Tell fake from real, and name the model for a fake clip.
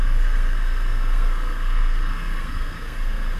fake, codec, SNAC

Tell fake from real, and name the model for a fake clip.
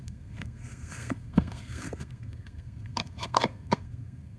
fake, codec, SNAC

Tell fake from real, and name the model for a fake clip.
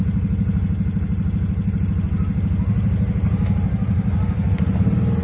real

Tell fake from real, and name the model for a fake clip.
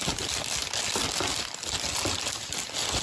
real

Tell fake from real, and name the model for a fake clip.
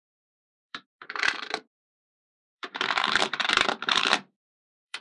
fake, vocoder, BigVGAN v2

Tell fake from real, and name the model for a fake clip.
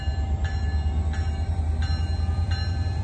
real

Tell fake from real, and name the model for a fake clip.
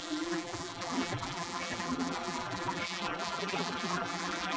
fake, vocoder, BigVGAN v2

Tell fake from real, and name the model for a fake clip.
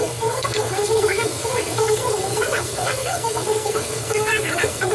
fake, codec, SNAC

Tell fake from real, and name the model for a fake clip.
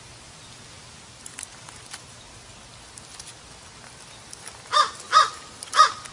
real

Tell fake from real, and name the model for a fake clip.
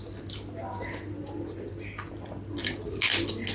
real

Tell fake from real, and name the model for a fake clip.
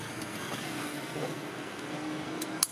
fake, codec, SNAC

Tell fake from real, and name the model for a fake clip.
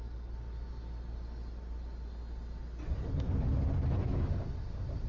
real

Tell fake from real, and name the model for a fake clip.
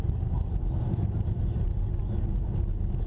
real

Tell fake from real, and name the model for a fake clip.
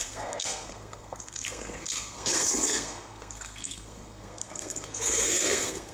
fake, codec, SNAC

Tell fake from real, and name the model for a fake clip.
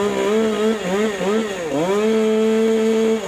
real